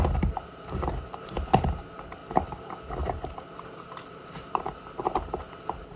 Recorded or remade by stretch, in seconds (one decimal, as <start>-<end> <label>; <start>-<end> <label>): 0.0-2.2 remade; 2.2-3.1 recorded; 3.1-6.0 remade